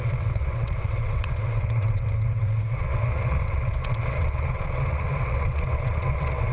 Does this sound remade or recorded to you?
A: remade